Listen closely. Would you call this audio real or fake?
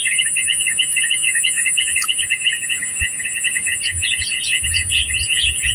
fake